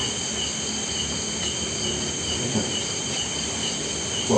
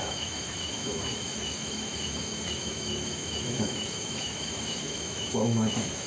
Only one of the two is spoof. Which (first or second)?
second